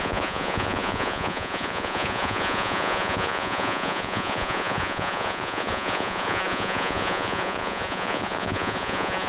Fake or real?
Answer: fake